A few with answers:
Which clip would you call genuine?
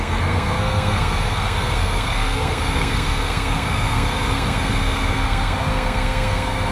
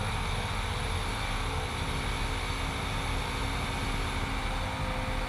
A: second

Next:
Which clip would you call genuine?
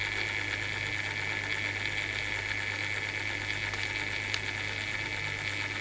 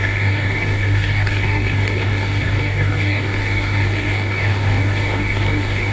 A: first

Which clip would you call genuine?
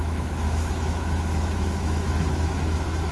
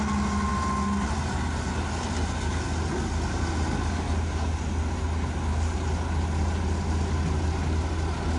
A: second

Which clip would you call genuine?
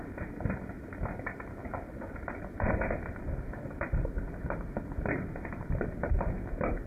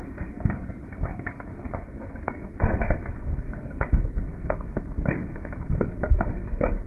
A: first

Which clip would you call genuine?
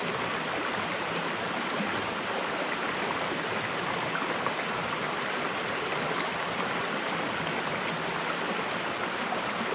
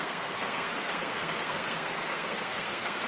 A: first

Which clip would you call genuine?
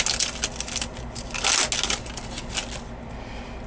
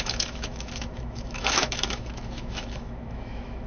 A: first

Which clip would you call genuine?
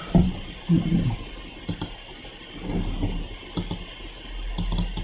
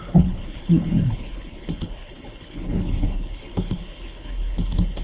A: first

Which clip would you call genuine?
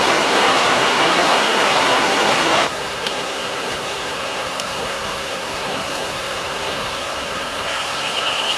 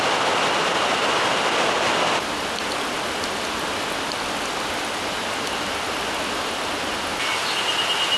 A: second